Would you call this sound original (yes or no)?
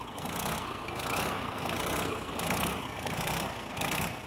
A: no